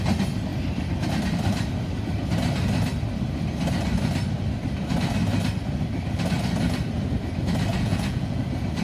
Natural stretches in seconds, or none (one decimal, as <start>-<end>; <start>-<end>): 0.0-7.7; 8.4-8.8